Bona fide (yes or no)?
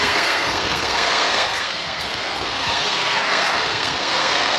no